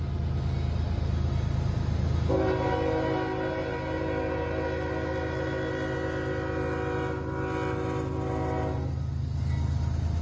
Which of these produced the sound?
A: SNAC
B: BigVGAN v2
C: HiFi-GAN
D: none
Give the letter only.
D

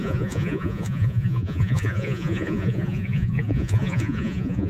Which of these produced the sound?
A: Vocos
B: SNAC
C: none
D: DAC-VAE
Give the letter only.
A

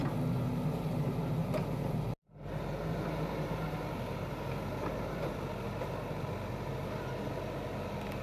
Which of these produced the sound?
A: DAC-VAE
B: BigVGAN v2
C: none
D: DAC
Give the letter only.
C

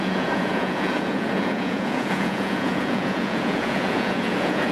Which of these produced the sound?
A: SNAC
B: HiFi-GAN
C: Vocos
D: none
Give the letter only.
C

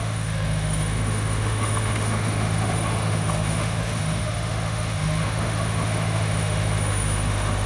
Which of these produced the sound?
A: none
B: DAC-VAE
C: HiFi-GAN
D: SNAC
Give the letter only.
B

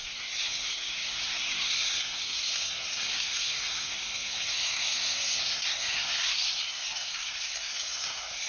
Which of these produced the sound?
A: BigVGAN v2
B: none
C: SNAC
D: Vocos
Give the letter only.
C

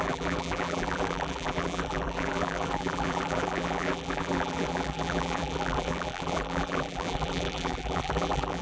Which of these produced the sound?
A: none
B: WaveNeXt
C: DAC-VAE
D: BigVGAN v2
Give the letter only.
D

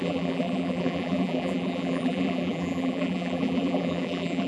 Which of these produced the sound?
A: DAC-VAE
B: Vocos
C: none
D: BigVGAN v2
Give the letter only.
D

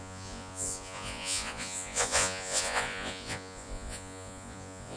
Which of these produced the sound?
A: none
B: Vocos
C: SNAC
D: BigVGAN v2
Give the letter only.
B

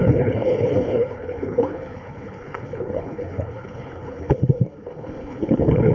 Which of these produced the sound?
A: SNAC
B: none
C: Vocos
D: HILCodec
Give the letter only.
D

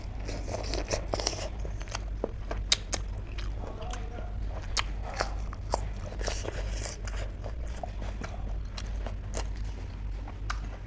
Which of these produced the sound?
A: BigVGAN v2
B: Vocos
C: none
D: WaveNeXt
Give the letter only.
C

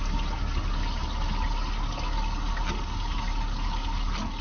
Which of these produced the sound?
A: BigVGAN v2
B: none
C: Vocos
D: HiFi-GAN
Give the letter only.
B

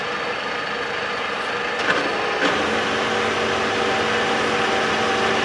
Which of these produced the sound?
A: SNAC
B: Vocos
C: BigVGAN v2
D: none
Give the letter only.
D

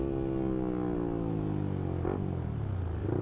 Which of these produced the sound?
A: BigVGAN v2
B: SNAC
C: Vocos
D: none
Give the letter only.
D